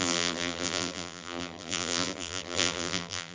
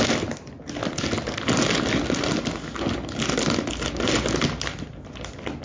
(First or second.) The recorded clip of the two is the second